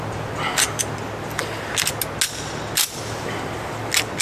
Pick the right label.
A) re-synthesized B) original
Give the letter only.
B